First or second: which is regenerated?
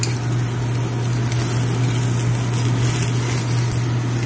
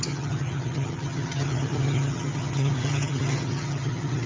second